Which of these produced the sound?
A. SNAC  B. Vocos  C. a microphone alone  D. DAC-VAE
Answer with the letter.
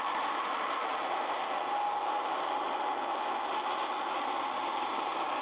C